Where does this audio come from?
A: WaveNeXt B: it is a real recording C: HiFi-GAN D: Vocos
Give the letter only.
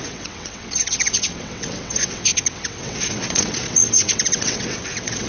A